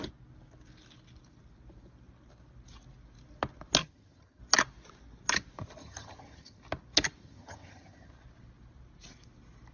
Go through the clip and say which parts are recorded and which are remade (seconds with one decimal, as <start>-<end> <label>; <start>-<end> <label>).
0.0-3.8 recorded; 3.8-4.4 remade; 4.4-5.8 recorded; 5.8-6.6 remade; 6.6-7.2 recorded; 7.2-8.1 remade; 8.1-9.7 recorded